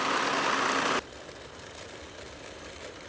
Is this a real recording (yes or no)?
yes